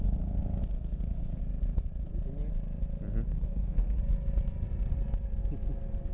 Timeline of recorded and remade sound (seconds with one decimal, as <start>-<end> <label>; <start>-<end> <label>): 0.0-0.6 recorded; 0.6-1.4 remade; 1.4-3.3 recorded; 3.3-4.0 remade; 4.0-6.1 recorded